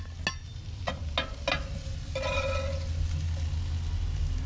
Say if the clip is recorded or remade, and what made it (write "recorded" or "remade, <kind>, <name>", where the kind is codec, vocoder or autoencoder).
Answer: recorded